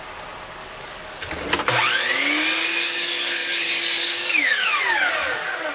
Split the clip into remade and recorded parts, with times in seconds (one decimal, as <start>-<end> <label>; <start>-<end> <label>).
0.0-0.6 recorded; 0.6-1.3 remade; 1.3-2.7 recorded; 2.7-5.7 remade